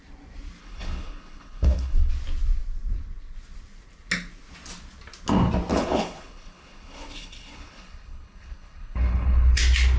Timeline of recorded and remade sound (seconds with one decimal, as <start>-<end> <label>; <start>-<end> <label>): 0.0-0.6 recorded; 0.6-2.1 remade; 2.1-5.7 recorded; 5.7-9.6 remade; 9.6-10.0 recorded